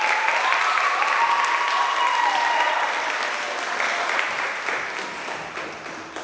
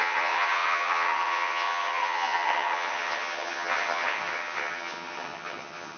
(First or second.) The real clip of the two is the first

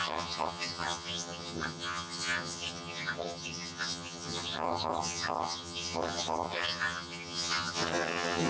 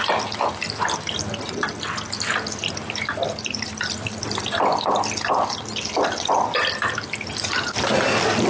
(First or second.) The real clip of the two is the second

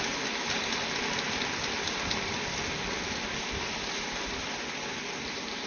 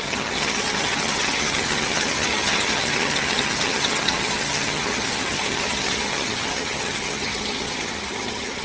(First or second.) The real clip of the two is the first